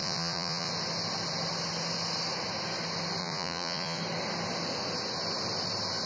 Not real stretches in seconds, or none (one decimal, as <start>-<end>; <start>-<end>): 0.0-0.7; 3.2-4.0